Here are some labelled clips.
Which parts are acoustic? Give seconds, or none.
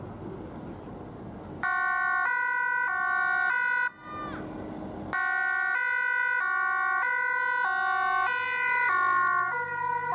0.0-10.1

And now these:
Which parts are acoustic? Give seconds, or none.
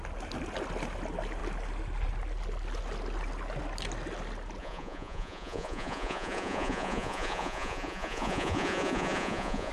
0.0-4.6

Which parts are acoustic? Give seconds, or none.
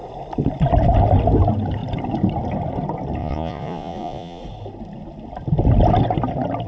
0.0-3.2; 4.4-6.7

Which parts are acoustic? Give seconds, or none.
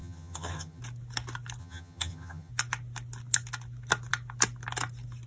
0.8-1.6; 2.5-5.3